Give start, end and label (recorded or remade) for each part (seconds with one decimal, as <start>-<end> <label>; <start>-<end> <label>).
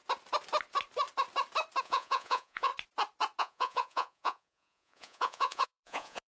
0.0-1.8 recorded; 1.8-2.7 remade; 2.7-3.4 recorded; 3.4-6.3 remade